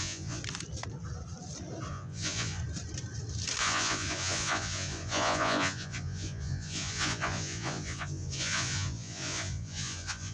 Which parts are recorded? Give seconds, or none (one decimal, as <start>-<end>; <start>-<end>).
0.4-1.9; 2.6-3.6